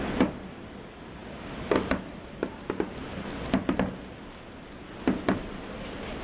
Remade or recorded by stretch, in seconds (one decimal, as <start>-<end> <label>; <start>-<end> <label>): 0.0-6.2 recorded